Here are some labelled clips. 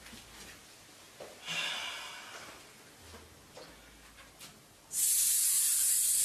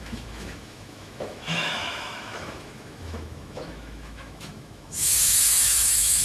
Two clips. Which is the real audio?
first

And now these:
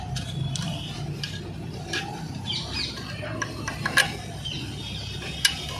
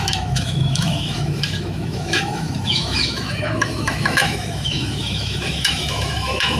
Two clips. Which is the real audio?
first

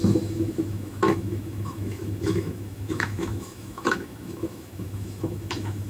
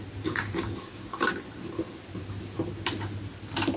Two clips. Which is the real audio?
second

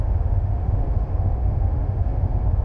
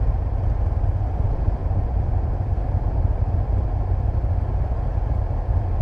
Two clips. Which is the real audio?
second